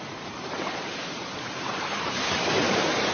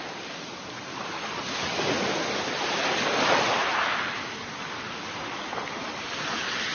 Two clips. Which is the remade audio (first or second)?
first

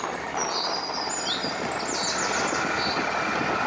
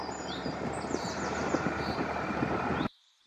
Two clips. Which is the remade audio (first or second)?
second